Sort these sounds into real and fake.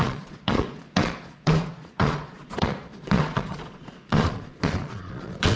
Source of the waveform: fake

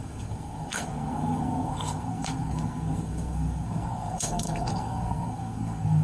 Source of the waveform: fake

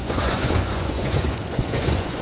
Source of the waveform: fake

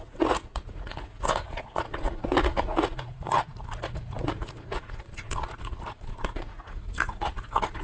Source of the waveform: fake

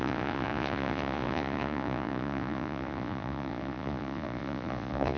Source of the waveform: fake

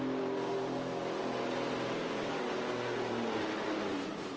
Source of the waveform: real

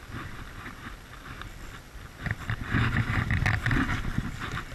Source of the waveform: real